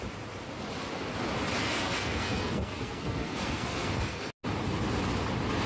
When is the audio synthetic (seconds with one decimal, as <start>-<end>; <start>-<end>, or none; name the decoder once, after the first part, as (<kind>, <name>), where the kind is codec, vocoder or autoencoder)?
1.6-4.3 (codec, SNAC)

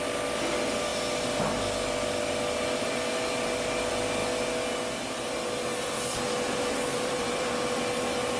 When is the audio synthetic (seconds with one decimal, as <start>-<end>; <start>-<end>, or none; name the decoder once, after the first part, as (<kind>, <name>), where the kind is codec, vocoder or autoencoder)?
6.9-7.5 (vocoder, BigVGAN v2)

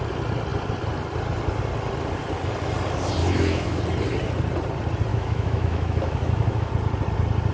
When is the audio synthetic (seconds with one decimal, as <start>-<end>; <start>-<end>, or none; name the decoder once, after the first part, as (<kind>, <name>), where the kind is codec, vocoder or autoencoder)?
3.2-3.8 (autoencoder, DAC-VAE); 5.1-6.7

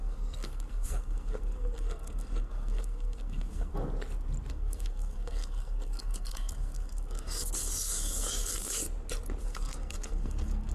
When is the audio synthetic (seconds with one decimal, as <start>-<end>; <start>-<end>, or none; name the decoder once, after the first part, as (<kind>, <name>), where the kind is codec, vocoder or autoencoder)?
0.0-3.7 (codec, SNAC); 4.5-8.8; 9.4-10.7